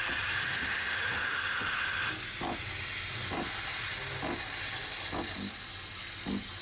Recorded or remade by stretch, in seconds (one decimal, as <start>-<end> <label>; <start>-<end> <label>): 0.0-0.4 recorded; 0.4-2.1 remade; 2.1-6.6 recorded